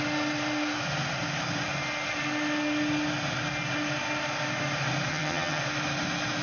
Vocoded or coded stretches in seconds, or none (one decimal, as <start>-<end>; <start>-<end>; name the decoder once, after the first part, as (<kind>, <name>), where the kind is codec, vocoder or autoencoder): 5.1-5.6 (vocoder, HiFi-GAN)